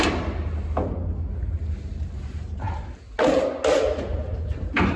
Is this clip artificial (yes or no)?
no